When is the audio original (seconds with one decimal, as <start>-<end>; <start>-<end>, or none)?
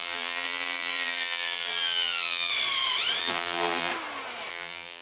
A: 2.5-3.2; 3.9-4.5